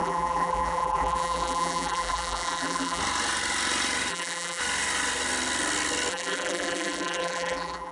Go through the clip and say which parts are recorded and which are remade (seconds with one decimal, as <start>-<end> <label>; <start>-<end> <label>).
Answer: 0.0-3.0 remade; 3.0-4.1 recorded; 4.1-4.6 remade; 4.6-6.1 recorded; 6.1-7.9 remade